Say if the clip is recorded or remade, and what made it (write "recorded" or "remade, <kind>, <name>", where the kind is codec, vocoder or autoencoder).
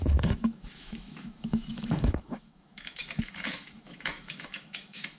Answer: remade, autoencoder, DAC-VAE